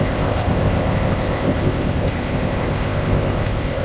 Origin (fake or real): fake